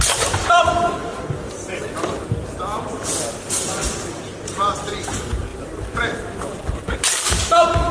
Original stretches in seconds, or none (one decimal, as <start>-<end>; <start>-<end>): 0.0-7.9